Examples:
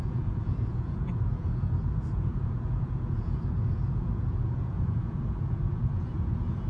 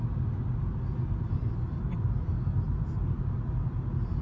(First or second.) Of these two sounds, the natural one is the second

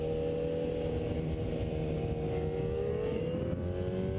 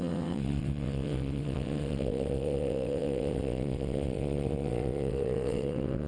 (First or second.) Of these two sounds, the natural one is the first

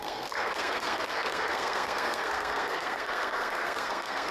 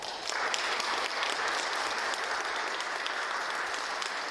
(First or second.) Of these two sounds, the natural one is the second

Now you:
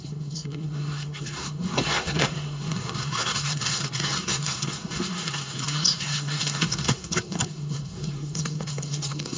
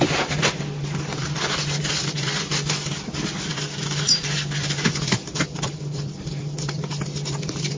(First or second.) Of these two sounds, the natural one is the second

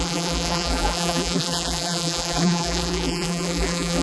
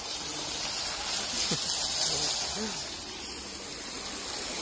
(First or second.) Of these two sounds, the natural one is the second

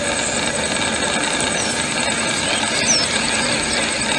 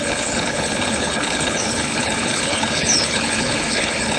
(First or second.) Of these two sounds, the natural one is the first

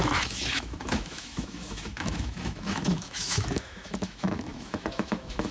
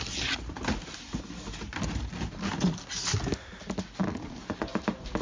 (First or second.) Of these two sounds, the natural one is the second